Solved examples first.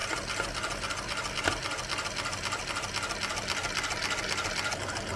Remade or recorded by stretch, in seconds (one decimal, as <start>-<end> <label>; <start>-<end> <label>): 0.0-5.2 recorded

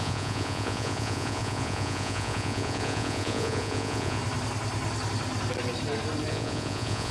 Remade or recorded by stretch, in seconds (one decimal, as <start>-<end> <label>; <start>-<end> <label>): 0.0-4.2 remade; 4.2-6.3 recorded; 6.3-7.1 remade

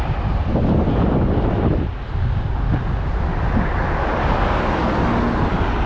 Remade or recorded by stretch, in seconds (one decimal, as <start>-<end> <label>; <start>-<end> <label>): 0.0-5.9 recorded

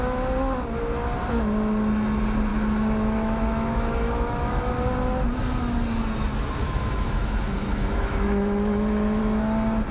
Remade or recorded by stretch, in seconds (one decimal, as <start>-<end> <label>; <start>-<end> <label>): 0.0-2.5 recorded; 2.5-4.7 remade; 4.7-6.6 recorded; 6.6-9.2 remade; 9.2-9.9 recorded